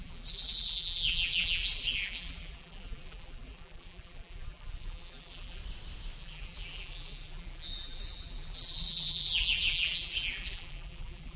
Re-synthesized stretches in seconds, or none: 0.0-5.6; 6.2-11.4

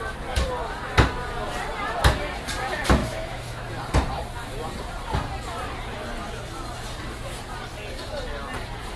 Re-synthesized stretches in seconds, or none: 3.0-3.7